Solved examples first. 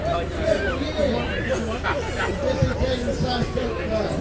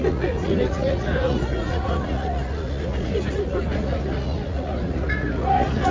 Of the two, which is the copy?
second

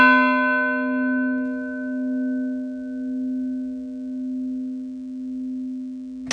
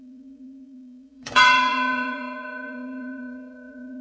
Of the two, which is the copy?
second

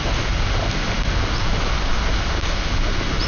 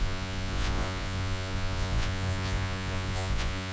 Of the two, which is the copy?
second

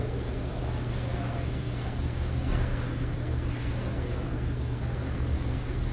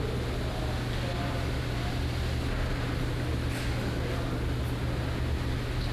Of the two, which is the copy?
first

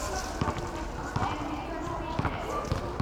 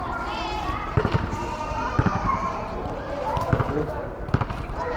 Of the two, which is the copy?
second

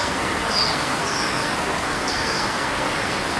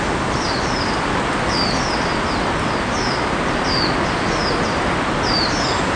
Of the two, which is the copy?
first